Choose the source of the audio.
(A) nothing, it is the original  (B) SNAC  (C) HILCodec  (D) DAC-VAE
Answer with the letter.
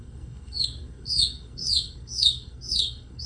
B